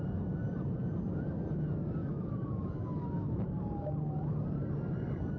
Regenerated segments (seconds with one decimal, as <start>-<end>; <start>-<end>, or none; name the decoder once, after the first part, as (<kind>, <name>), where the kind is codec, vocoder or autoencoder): 2.0-3.5 (autoencoder, DAC-VAE)